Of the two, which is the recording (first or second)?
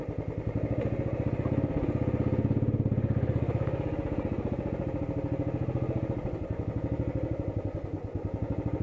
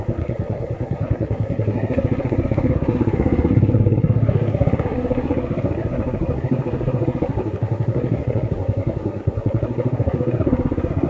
first